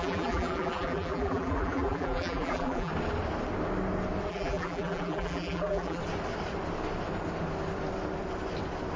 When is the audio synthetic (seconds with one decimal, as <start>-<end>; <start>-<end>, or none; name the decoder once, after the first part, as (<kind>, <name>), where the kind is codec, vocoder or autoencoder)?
0.0-2.9 (vocoder, BigVGAN v2); 4.3-6.0